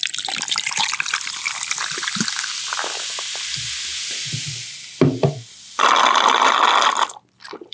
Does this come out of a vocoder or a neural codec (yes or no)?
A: no